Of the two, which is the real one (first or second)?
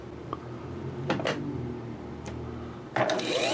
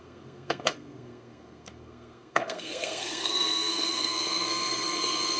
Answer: first